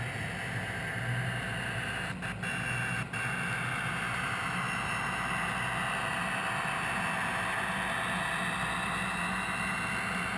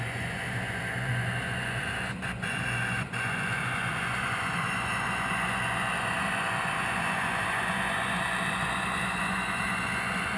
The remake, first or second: second